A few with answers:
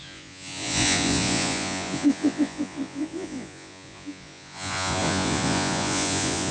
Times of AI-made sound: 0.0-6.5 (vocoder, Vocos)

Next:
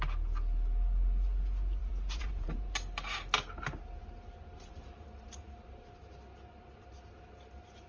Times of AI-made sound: 1.8-2.7 (vocoder, Vocos)

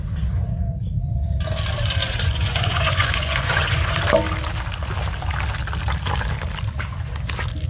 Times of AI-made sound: 2.0-4.0 (vocoder, Vocos)

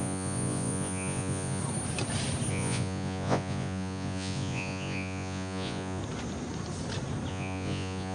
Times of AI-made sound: 0.0-1.6 (vocoder, Vocos); 2.5-6.0; 7.3-8.1

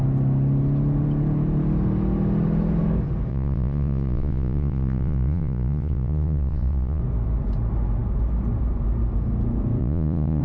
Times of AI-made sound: 3.3-7.0 (vocoder, Vocos); 9.8-10.4

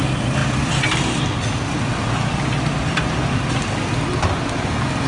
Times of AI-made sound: none